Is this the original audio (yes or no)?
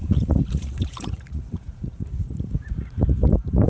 no